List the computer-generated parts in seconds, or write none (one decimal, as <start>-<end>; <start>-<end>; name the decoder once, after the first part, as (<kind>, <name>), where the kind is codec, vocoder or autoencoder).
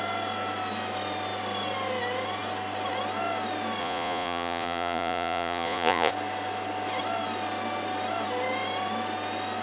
3.8-6.1 (vocoder, Vocos)